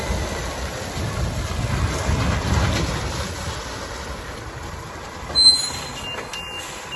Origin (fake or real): real